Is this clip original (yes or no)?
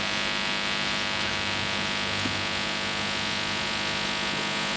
yes